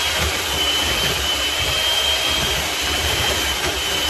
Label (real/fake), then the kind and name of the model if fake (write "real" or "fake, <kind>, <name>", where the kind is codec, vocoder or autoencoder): fake, vocoder, BigVGAN v2